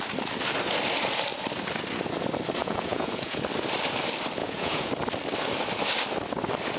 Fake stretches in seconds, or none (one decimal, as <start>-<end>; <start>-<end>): 2.6-3.4; 4.4-4.9